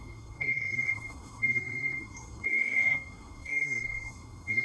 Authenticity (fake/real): fake